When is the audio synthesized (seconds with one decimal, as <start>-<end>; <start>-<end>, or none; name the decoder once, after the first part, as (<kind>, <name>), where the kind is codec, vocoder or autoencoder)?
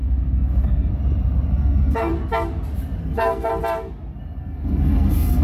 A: 0.0-0.9 (codec, SNAC); 1.5-2.1; 3.0-3.5; 4.4-5.4